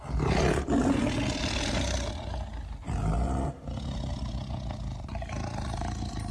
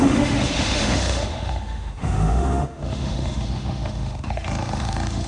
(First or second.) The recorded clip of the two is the first